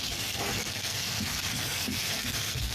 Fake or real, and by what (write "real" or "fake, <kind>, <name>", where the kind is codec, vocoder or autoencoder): fake, codec, SNAC